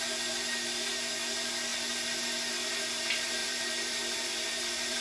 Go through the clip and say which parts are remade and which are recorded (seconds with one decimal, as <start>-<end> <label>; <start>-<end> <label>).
0.0-3.4 recorded; 3.4-5.0 remade